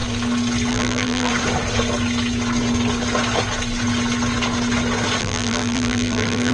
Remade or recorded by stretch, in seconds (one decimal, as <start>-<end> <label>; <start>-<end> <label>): 0.0-0.7 recorded; 0.7-1.3 remade; 1.3-5.2 recorded; 5.2-6.5 remade